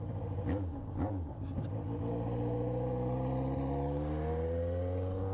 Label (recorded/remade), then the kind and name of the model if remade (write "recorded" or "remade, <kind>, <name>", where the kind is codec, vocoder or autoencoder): recorded